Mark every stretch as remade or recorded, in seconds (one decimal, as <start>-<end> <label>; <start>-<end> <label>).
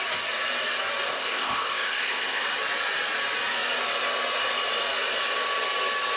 0.0-1.1 recorded; 1.1-2.4 remade; 2.4-6.2 recorded